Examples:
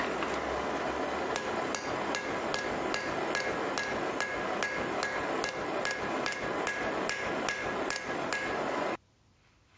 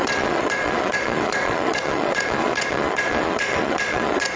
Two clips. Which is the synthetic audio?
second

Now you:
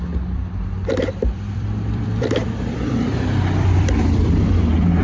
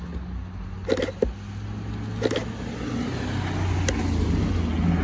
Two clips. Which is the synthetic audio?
first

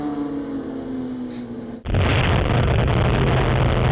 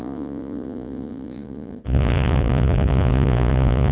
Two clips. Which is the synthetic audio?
second